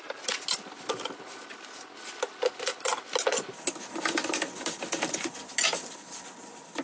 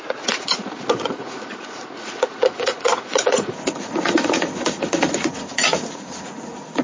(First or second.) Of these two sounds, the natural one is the first